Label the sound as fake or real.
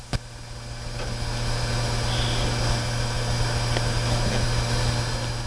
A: real